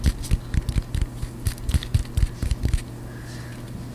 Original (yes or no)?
yes